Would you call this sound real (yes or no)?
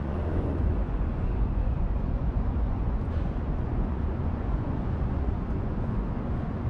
no